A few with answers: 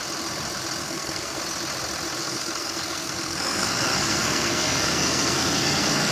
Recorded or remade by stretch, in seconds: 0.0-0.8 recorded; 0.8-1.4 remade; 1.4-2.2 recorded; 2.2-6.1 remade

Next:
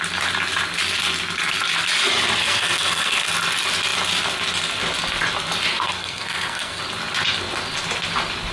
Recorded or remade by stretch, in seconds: 0.0-2.4 recorded; 2.4-3.3 remade; 3.3-5.7 recorded; 5.7-6.8 remade; 6.8-8.5 recorded

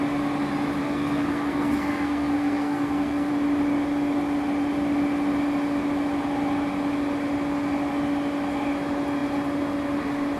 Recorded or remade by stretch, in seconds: 0.0-0.8 recorded; 0.8-3.3 remade; 3.3-10.4 recorded